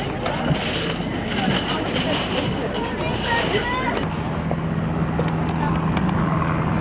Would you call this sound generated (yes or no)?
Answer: no